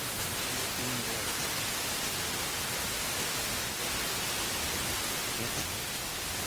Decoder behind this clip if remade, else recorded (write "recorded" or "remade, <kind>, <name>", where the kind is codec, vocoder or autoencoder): recorded